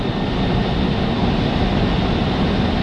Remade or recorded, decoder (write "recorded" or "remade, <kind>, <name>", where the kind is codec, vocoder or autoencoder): recorded